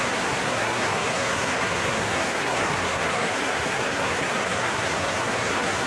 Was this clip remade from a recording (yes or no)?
yes